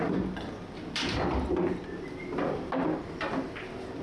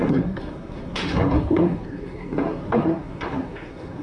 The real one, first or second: first